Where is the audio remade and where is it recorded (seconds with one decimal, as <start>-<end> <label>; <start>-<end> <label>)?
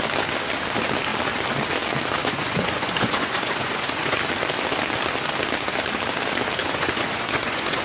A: 0.0-2.2 recorded; 2.2-4.2 remade; 4.2-6.6 recorded; 6.6-7.8 remade